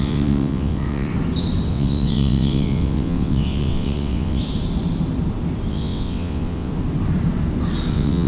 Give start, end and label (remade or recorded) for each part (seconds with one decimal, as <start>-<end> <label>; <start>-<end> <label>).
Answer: 0.0-1.1 remade; 1.1-1.7 recorded; 1.7-4.4 remade; 4.4-5.7 recorded; 5.7-6.7 remade; 6.7-7.9 recorded; 7.9-8.3 remade